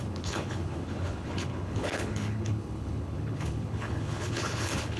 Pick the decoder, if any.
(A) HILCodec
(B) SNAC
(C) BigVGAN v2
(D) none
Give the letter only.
A